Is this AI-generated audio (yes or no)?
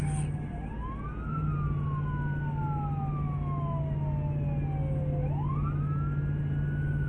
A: no